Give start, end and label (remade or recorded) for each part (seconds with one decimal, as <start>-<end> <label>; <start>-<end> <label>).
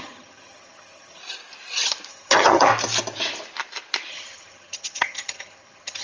0.0-1.2 remade; 1.2-2.1 recorded; 2.1-2.7 remade; 2.7-4.1 recorded; 4.1-6.0 remade